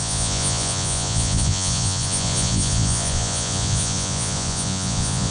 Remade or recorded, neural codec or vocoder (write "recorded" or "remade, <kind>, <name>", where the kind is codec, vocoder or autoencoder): remade, vocoder, Vocos